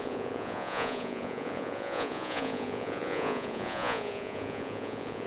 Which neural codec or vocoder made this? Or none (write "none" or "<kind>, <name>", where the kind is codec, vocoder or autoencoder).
vocoder, Vocos